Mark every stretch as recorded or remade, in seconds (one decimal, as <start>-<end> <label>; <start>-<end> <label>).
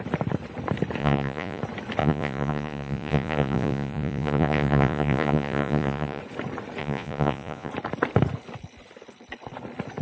0.0-1.0 recorded; 1.0-1.6 remade; 1.6-2.0 recorded; 2.0-6.2 remade; 6.2-6.8 recorded; 6.8-7.7 remade; 7.7-10.0 recorded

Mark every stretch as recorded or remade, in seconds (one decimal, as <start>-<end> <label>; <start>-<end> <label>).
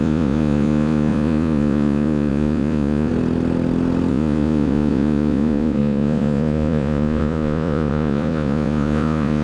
0.0-3.1 remade; 3.1-4.1 recorded; 4.1-9.4 remade